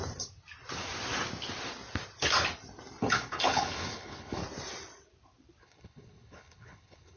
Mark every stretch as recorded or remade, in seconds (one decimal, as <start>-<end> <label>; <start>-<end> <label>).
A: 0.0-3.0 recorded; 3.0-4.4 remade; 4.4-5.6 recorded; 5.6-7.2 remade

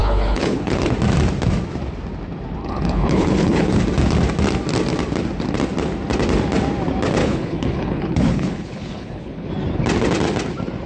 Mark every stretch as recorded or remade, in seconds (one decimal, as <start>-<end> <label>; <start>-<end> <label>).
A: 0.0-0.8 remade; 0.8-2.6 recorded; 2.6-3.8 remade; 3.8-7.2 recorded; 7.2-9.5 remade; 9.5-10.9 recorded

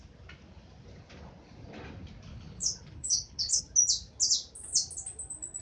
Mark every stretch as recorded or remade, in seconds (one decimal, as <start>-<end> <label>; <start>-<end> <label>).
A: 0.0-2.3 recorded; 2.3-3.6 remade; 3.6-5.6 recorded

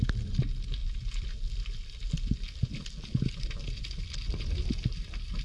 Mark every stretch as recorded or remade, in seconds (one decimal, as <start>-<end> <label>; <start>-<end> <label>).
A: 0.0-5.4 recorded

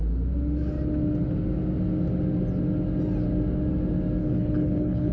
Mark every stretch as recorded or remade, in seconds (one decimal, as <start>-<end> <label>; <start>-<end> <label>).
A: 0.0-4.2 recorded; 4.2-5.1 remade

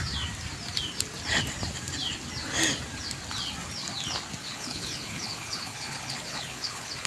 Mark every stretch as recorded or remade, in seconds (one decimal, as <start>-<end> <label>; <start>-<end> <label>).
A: 0.0-4.4 recorded; 4.4-7.1 remade

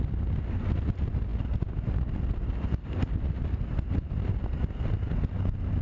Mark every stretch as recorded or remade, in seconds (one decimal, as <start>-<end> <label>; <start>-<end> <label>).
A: 0.0-5.8 recorded

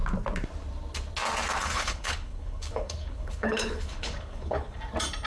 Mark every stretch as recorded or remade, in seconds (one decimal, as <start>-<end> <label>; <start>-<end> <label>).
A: 0.0-1.6 recorded; 1.6-4.8 remade; 4.8-5.3 recorded